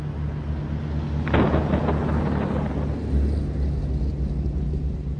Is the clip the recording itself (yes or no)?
yes